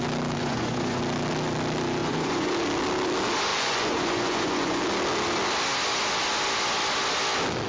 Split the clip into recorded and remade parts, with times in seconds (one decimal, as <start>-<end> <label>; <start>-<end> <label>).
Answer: 0.0-0.4 recorded; 0.4-1.0 remade; 1.0-2.0 recorded; 2.0-2.5 remade; 2.5-3.5 recorded; 3.5-4.8 remade; 4.8-7.7 recorded